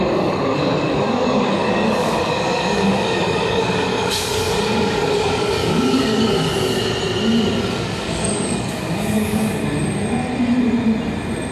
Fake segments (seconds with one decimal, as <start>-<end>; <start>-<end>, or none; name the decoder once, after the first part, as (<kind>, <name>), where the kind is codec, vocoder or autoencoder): 0.0-6.5 (codec, DAC); 7.7-9.6

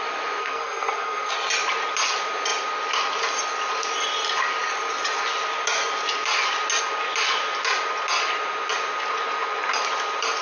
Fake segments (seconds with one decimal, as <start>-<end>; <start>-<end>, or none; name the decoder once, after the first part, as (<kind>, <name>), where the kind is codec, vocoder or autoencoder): 0.4-1.3 (codec, SNAC)